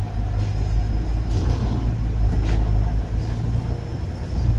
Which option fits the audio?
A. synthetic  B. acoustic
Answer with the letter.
B